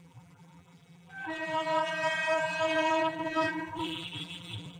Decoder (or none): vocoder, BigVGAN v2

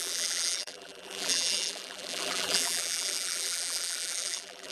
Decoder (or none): vocoder, BigVGAN v2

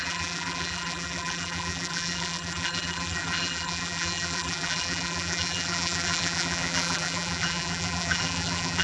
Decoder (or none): vocoder, BigVGAN v2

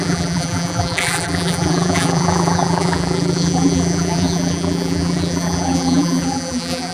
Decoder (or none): vocoder, BigVGAN v2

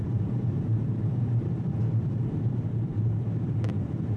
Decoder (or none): vocoder, BigVGAN v2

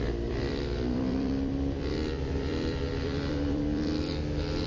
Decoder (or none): vocoder, BigVGAN v2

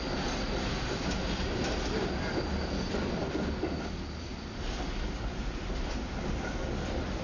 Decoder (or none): vocoder, BigVGAN v2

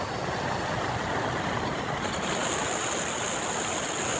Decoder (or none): none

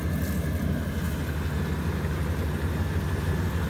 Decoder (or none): none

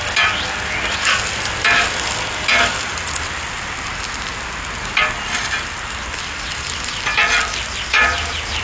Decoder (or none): none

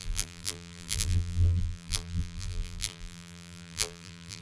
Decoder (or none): vocoder, BigVGAN v2